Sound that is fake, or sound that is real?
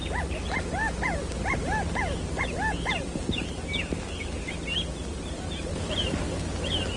real